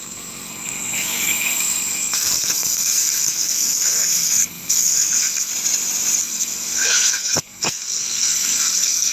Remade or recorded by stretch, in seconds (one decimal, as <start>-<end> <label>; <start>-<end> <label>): 0.0-5.5 remade; 5.5-6.2 recorded; 6.2-9.1 remade